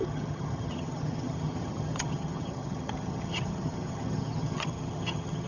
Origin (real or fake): fake